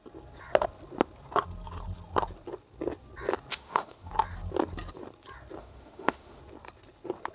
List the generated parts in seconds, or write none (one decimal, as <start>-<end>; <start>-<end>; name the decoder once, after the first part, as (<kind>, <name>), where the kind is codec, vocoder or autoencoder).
3.5-4.1 (autoencoder, DAC-VAE); 5.6-6.4